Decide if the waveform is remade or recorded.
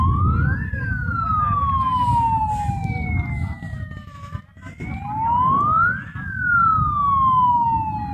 recorded